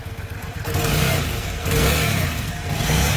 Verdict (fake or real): fake